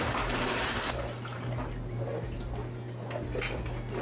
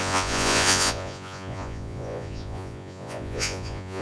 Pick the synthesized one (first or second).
second